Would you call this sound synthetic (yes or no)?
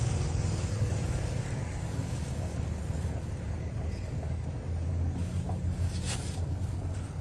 yes